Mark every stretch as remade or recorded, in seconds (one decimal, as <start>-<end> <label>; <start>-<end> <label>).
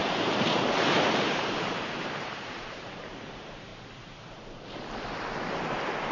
0.0-3.7 remade; 3.7-6.1 recorded